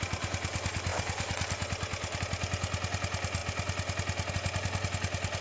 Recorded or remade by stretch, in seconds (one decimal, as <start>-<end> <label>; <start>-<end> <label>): 0.0-5.4 recorded